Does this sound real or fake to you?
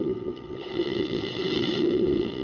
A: fake